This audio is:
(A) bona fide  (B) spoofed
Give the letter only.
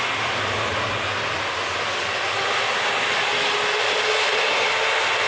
A